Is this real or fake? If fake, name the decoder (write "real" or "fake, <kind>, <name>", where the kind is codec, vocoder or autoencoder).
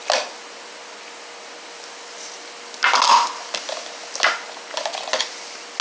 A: real